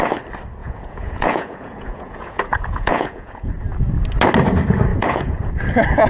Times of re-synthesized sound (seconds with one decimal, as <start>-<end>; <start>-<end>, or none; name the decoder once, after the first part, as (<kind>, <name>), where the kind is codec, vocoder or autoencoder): 0.6-3.5 (vocoder, Vocos); 4.9-5.5